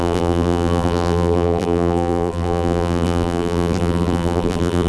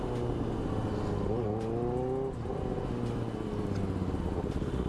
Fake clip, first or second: first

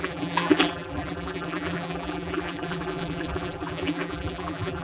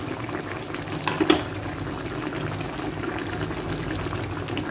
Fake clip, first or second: first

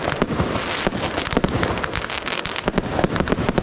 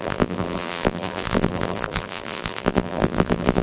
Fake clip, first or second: second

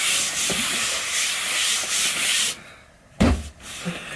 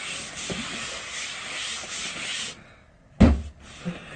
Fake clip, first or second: first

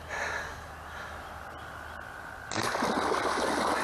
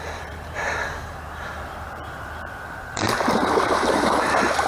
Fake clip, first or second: second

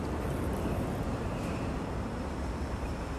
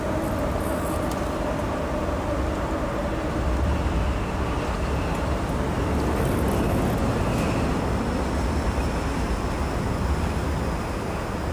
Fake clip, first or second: first